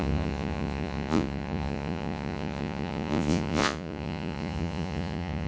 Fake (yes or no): yes